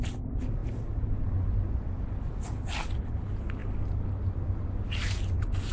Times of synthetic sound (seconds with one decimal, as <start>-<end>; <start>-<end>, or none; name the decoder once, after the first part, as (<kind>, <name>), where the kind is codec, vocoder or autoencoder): none